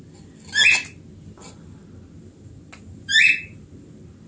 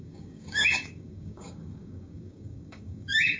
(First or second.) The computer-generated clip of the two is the second